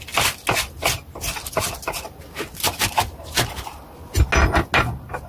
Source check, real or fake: real